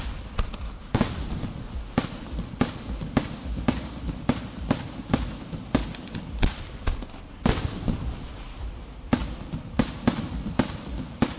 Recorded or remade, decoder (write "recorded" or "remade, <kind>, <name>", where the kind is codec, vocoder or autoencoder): recorded